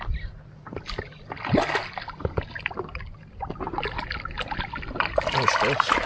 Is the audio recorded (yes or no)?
yes